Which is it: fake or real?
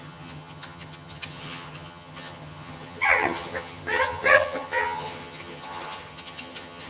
fake